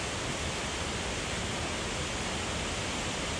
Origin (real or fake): real